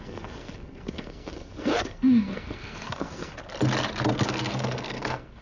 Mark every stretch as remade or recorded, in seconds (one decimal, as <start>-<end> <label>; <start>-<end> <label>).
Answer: 0.0-3.3 remade; 3.3-4.1 recorded; 4.1-5.4 remade